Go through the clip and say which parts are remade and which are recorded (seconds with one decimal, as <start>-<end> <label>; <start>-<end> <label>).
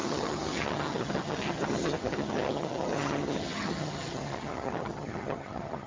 0.0-5.9 remade